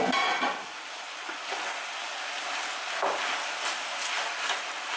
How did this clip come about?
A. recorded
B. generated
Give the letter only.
A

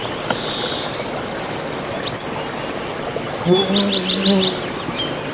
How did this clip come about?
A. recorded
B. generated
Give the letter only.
A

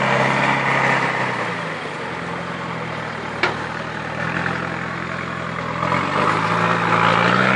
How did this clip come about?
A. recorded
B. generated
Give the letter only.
A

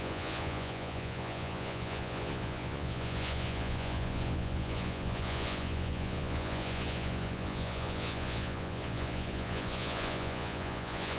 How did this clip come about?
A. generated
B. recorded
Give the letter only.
A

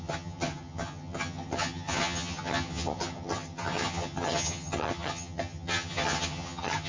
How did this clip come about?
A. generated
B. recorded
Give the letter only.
A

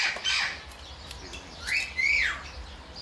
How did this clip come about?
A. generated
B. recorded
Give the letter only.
B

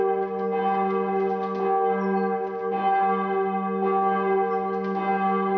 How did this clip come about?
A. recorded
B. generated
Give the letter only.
A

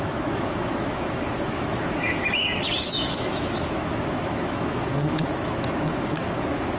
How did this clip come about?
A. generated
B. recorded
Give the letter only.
A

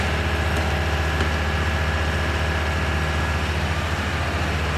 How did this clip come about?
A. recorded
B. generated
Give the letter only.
A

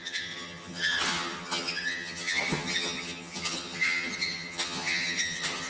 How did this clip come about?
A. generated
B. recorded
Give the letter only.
A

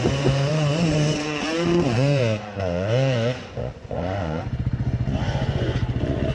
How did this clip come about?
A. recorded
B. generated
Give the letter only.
B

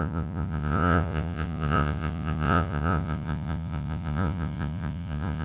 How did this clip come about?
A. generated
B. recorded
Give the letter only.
A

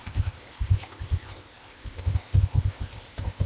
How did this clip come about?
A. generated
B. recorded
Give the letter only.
A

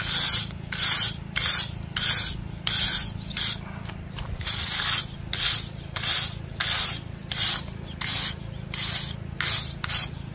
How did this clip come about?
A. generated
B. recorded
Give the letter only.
B